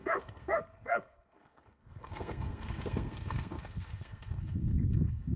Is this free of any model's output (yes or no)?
no